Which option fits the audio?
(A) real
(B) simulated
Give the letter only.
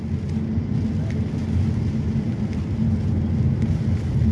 A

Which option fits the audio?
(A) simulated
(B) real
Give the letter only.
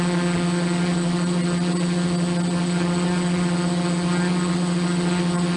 B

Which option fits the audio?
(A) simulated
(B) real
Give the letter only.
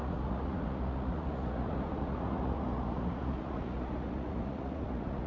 A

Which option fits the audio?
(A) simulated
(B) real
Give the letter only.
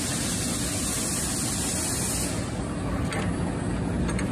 B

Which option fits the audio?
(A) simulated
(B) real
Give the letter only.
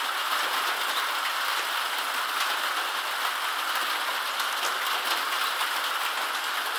B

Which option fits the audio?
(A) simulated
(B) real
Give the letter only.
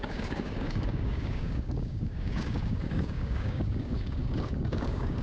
A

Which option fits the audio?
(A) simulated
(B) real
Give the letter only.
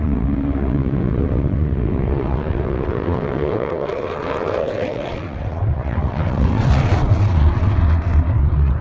A